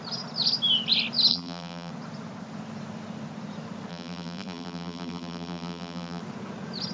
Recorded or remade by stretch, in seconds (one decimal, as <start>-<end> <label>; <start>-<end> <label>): 0.0-1.3 recorded; 1.3-1.9 remade; 1.9-3.9 recorded; 3.9-6.2 remade; 6.2-6.9 recorded